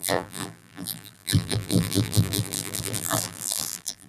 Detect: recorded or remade remade